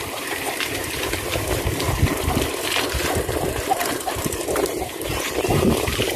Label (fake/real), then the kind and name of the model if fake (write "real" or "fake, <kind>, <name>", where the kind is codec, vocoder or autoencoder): fake, vocoder, BigVGAN v2